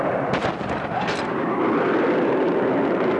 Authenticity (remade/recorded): recorded